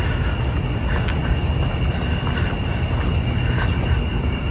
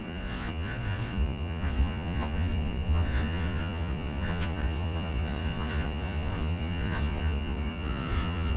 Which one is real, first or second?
first